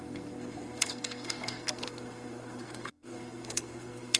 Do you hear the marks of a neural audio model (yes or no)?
yes